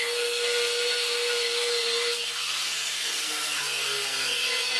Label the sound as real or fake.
fake